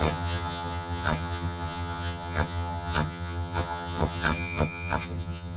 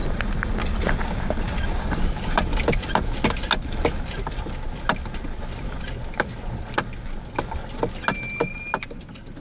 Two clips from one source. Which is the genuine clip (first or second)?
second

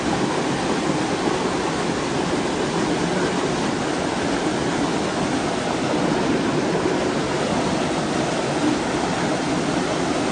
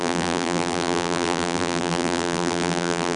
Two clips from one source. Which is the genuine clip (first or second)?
first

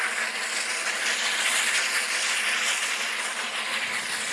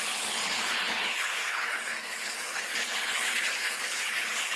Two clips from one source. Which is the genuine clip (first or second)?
first